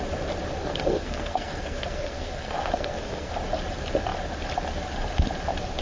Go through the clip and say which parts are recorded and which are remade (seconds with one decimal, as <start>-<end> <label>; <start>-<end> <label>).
0.0-0.6 recorded; 0.6-3.3 remade; 3.3-5.8 recorded